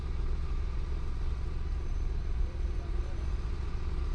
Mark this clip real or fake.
fake